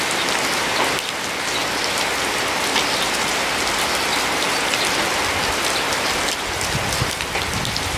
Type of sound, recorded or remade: recorded